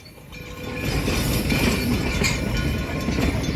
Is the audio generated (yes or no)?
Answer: no